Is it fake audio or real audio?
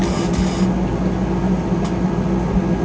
real